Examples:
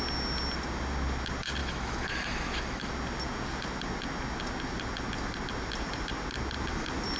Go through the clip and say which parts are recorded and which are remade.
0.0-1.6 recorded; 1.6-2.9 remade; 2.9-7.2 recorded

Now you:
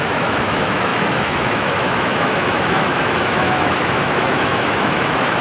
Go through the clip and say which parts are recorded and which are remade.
0.0-5.4 remade

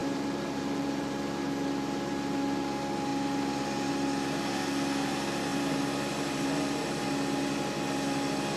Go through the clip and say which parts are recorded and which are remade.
0.0-1.0 remade; 1.0-5.5 recorded; 5.5-7.0 remade; 7.0-8.6 recorded

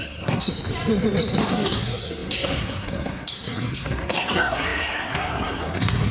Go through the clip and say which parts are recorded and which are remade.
0.0-0.5 remade; 0.5-1.5 recorded; 1.5-6.1 remade

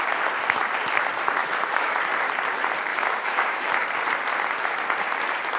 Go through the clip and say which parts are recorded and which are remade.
0.0-1.4 recorded; 1.4-1.9 remade; 1.9-2.9 recorded; 2.9-3.7 remade; 3.7-5.6 recorded

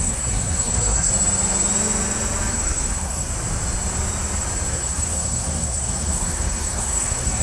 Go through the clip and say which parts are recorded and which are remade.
0.0-1.1 remade; 1.1-2.5 recorded; 2.5-3.3 remade; 3.3-4.7 recorded; 4.7-7.4 remade